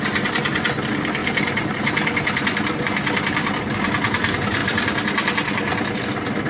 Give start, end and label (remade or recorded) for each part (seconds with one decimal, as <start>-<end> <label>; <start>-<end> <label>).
0.0-1.2 recorded; 1.2-3.6 remade; 3.6-6.5 recorded